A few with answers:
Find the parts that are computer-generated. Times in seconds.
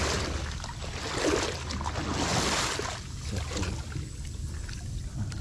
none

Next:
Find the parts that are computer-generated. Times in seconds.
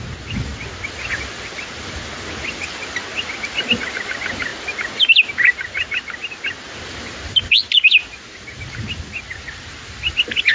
none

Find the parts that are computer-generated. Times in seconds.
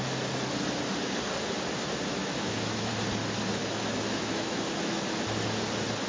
2.2-2.9 (autoencoder, DAC-VAE); 3.6-4.6